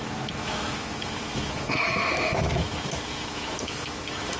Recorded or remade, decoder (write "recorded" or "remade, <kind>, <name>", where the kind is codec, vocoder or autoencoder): remade, autoencoder, DAC-VAE